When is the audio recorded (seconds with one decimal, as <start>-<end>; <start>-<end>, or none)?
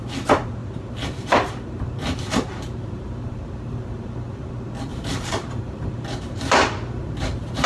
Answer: 0.0-0.6; 4.5-4.9